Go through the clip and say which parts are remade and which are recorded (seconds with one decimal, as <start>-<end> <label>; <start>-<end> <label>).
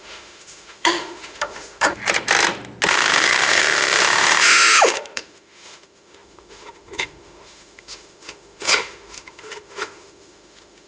0.0-2.0 remade; 2.0-2.9 recorded; 2.9-10.9 remade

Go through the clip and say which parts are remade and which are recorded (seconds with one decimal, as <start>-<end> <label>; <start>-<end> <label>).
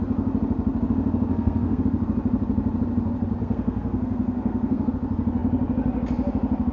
0.0-1.3 recorded; 1.3-1.8 remade; 1.8-3.4 recorded; 3.4-4.9 remade; 4.9-6.7 recorded